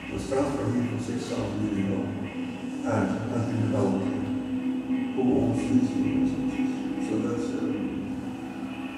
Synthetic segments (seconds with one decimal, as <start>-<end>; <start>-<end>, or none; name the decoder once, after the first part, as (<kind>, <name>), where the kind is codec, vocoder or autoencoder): 2.4-3.5 (vocoder, Vocos); 5.0-5.7